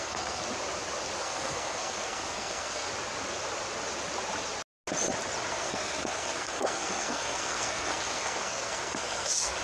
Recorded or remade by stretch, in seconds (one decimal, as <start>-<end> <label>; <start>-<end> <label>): 0.0-0.4 remade; 0.4-1.2 recorded; 1.2-2.9 remade; 2.9-5.5 recorded; 5.5-9.6 remade